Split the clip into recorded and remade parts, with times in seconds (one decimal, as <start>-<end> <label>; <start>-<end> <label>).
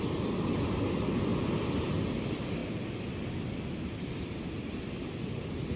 0.0-5.8 recorded